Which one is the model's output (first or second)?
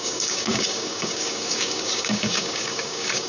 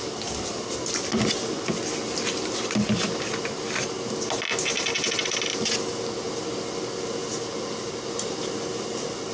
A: first